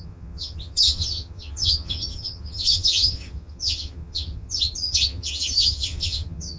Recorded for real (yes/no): no